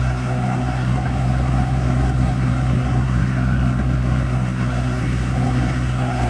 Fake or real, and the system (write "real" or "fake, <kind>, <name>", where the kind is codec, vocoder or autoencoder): fake, codec, SNAC